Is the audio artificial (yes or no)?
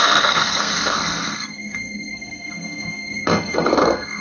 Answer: yes